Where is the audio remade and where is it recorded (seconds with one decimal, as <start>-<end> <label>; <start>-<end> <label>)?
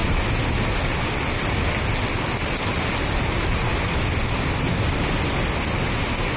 0.0-6.4 recorded